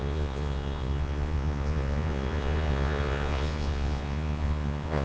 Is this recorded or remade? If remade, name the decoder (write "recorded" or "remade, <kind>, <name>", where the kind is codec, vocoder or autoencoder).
remade, vocoder, Vocos